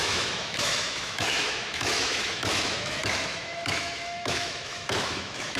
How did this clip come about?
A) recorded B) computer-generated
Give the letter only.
B